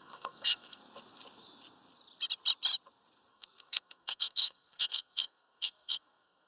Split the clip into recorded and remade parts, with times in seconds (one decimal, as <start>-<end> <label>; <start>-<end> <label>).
0.0-0.8 remade; 0.8-3.3 recorded; 3.3-6.5 remade

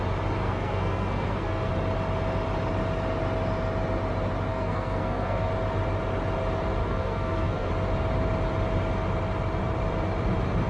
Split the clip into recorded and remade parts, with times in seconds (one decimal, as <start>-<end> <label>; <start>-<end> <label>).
0.0-0.4 recorded; 0.4-1.7 remade; 1.7-4.5 recorded; 4.5-5.5 remade; 5.5-6.8 recorded; 6.8-7.7 remade; 7.7-10.7 recorded

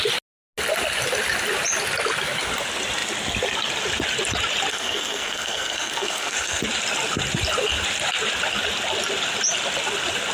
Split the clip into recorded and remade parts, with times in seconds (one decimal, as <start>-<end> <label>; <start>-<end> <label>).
0.0-4.7 recorded; 4.7-6.6 remade; 6.6-10.3 recorded

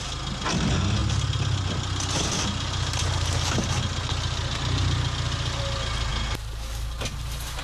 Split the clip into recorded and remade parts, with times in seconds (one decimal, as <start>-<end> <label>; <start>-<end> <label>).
0.0-7.6 recorded

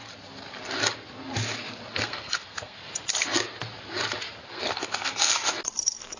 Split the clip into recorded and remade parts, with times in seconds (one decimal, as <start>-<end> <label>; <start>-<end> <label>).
0.0-1.9 recorded; 1.9-2.8 remade; 2.8-4.5 recorded; 4.5-5.3 remade; 5.3-6.2 recorded